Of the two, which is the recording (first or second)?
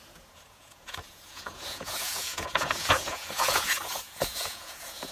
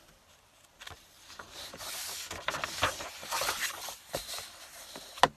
second